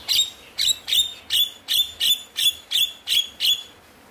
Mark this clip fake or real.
real